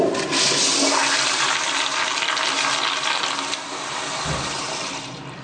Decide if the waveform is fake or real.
real